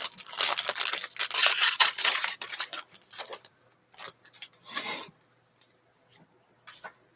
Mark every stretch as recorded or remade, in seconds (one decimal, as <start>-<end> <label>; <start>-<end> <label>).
0.0-1.4 recorded; 1.4-3.6 remade; 3.6-7.2 recorded